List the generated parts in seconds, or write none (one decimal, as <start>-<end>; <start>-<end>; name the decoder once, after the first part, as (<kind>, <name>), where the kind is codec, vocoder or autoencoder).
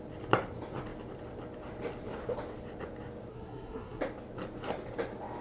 3.3-4.0 (codec, SNAC)